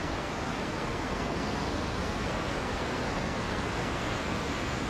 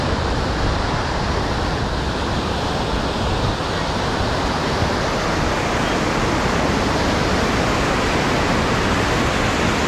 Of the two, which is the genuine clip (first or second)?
second